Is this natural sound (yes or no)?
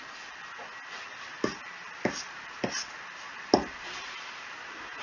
yes